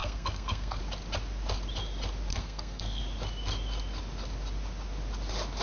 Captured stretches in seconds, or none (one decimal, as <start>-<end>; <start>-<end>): 0.8-2.3; 3.0-5.6